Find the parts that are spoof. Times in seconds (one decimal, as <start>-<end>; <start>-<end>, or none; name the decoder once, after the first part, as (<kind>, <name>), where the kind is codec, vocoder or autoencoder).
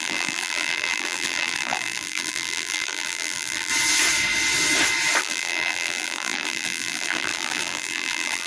0.0-3.7 (vocoder, BigVGAN v2); 5.2-8.5